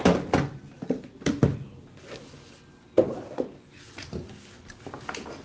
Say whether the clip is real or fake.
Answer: real